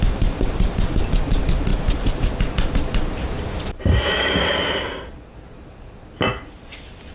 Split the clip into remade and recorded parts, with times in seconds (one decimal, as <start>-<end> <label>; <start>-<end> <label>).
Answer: 0.0-7.1 recorded